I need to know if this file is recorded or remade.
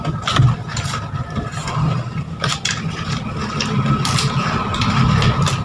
recorded